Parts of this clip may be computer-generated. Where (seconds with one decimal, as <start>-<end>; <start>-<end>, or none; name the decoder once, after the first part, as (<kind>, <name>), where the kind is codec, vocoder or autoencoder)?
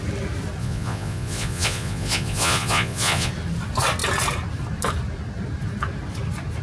0.6-3.3 (vocoder, Vocos)